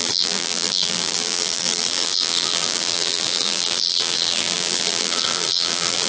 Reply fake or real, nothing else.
fake